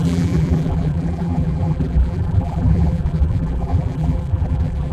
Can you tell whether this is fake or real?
fake